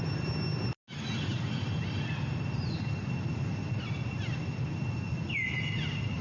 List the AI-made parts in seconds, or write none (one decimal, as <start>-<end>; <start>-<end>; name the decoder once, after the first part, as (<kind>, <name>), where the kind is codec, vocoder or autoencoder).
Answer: none